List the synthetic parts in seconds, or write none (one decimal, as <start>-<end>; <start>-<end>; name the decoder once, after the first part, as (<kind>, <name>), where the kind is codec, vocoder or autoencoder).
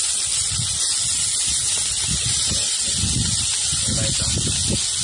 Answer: none